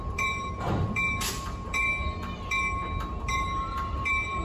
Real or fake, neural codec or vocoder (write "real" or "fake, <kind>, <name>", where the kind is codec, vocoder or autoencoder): fake, vocoder, BigVGAN v2